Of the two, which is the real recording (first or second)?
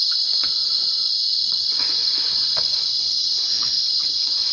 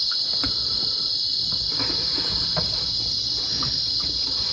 second